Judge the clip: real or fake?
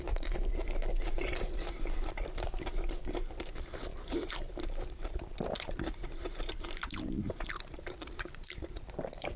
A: fake